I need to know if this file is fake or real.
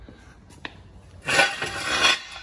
real